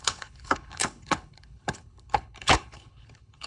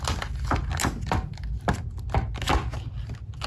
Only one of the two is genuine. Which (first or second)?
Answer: second